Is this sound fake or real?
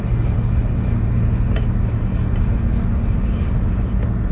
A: real